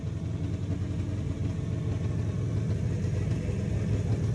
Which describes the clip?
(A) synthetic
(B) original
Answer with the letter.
B